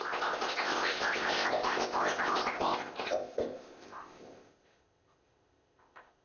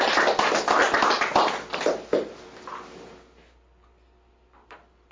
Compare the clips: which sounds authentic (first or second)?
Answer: second